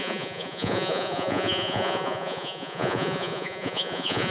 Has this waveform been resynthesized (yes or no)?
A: yes